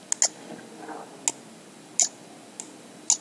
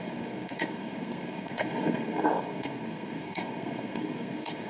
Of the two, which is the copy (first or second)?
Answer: second